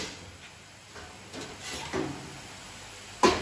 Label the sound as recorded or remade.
recorded